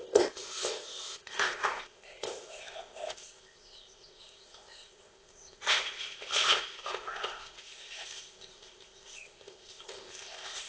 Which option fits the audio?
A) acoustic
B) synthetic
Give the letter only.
B